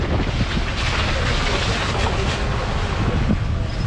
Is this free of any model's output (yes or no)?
yes